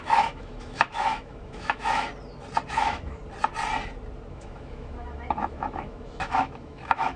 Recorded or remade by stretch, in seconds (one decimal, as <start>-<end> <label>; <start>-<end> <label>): 0.0-2.1 remade; 2.1-2.7 recorded; 2.7-3.2 remade; 3.2-4.3 recorded; 4.3-7.2 remade